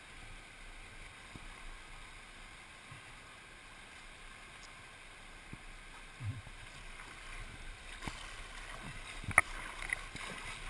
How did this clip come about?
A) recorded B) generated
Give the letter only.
A